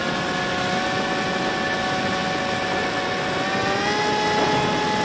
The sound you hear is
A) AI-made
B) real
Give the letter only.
B